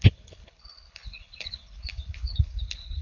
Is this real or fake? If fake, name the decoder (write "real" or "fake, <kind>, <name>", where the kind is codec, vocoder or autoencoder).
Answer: fake, codec, HILCodec